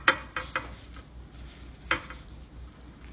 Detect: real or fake real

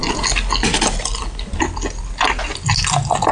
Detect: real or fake real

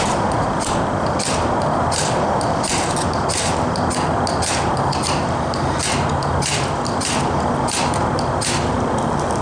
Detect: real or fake real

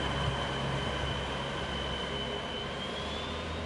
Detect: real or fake real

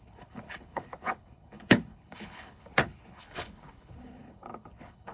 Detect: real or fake fake